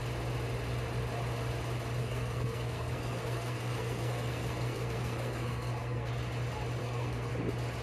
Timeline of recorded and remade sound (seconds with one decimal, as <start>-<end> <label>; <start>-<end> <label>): 0.0-2.0 recorded; 2.0-6.1 remade; 6.1-6.8 recorded; 6.8-7.3 remade; 7.3-7.8 recorded